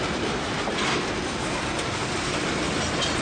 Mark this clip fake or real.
real